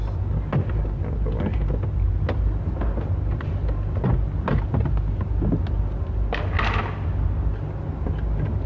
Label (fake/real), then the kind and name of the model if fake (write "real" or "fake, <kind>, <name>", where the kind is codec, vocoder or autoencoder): real